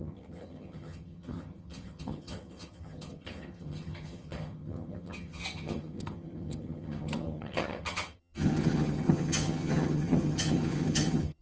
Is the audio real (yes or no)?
no